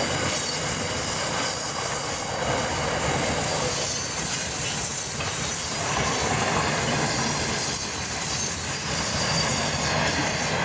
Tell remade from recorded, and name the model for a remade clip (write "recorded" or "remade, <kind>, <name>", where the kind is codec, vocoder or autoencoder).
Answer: recorded